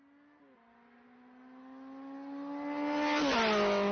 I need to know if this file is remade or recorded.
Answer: recorded